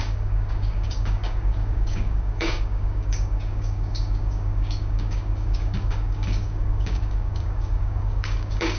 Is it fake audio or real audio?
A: fake